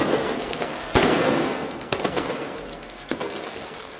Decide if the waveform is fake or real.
fake